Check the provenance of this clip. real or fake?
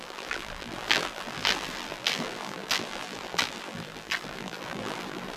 fake